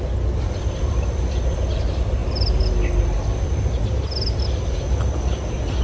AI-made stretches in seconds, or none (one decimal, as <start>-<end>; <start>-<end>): none